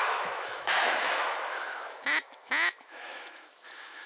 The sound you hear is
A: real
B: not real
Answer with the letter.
B